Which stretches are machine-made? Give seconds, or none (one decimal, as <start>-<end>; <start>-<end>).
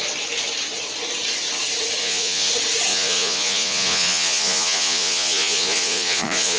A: 2.0-2.5; 2.9-6.6